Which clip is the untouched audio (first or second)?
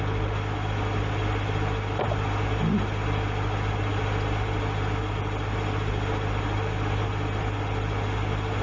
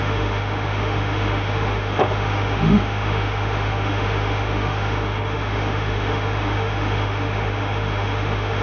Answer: first